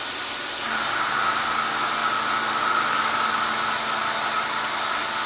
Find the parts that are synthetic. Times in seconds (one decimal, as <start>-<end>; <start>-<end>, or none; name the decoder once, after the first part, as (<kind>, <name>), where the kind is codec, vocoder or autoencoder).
none